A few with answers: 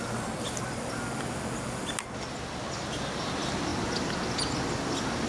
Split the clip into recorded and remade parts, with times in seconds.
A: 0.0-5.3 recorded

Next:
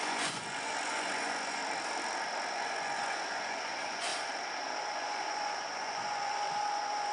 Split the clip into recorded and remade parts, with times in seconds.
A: 0.0-1.6 remade; 1.6-2.5 recorded; 2.5-4.1 remade; 4.1-4.9 recorded; 4.9-7.1 remade

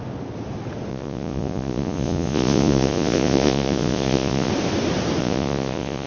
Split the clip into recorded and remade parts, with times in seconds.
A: 0.0-0.9 recorded; 0.9-4.5 remade; 4.5-5.2 recorded; 5.2-6.1 remade